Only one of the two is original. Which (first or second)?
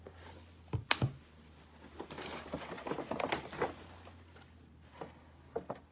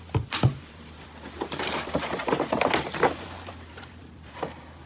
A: first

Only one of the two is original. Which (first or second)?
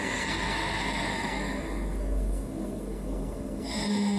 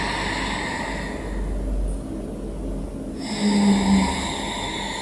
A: second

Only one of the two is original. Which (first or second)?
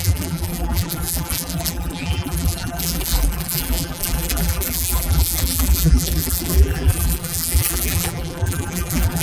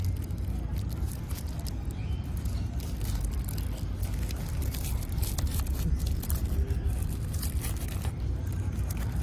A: second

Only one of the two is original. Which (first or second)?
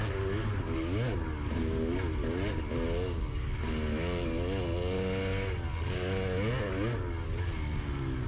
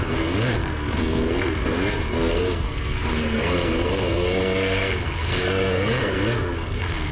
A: first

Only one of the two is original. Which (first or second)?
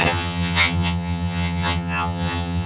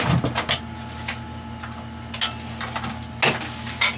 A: second